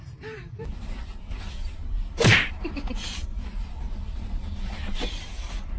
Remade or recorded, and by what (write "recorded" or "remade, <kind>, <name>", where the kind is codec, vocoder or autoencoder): remade, vocoder, BigVGAN v2